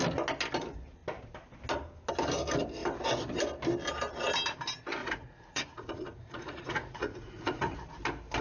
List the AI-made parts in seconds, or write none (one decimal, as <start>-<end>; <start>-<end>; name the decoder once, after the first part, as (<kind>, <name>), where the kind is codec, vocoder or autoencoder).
5.0-8.0 (vocoder, Vocos)

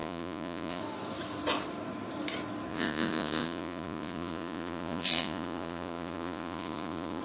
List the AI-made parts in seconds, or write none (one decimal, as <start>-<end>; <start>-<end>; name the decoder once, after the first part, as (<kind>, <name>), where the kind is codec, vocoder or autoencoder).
0.0-0.8 (vocoder, Vocos); 2.7-7.2

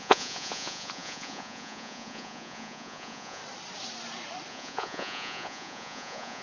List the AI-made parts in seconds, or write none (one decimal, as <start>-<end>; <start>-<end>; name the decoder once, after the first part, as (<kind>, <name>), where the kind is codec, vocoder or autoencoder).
0.0-3.4 (vocoder, Vocos); 4.5-6.4

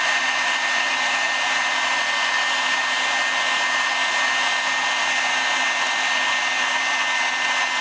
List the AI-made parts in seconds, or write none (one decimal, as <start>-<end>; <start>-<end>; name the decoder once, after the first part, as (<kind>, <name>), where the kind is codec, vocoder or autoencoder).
none

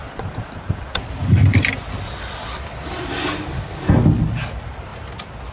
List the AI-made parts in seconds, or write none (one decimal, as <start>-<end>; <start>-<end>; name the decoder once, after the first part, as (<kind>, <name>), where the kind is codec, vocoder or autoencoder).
none